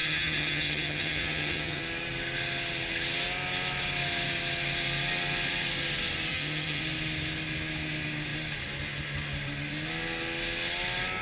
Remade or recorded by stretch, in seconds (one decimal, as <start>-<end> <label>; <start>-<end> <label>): 0.0-1.8 remade; 1.8-6.3 recorded; 6.3-6.8 remade; 6.8-11.2 recorded